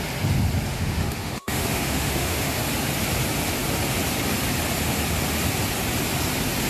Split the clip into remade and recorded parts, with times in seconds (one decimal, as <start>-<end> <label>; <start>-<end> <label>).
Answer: 0.0-0.7 recorded; 0.7-2.6 remade; 2.6-6.7 recorded